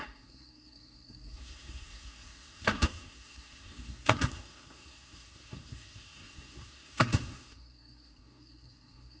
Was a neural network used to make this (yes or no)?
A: yes